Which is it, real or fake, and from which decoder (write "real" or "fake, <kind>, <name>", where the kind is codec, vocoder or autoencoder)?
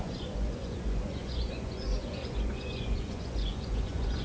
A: fake, vocoder, Vocos